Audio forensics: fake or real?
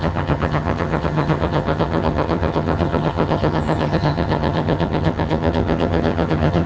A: fake